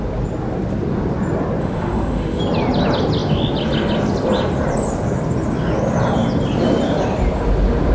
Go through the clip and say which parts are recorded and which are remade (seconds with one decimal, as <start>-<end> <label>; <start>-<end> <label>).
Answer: 0.0-1.6 recorded; 1.6-2.4 remade; 2.4-7.9 recorded